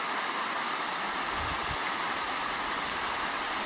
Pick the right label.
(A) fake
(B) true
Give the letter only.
B